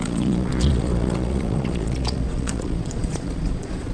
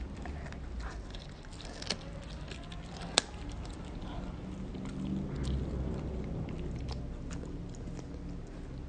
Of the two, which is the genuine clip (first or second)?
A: second